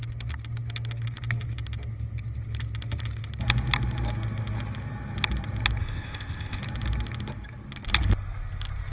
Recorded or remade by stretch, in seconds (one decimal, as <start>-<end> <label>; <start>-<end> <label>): 0.0-5.8 recorded; 5.8-6.6 remade; 6.6-8.9 recorded